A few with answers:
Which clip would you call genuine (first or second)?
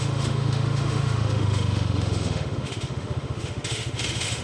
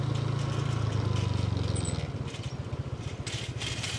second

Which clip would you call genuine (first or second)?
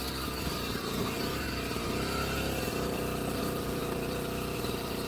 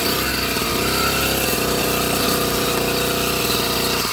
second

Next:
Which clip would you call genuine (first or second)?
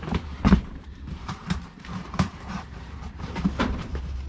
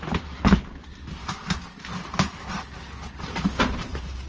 second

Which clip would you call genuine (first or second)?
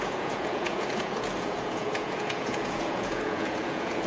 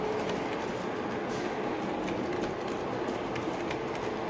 second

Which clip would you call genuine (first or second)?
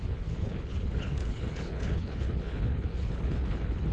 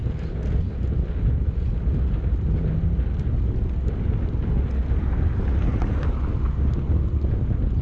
second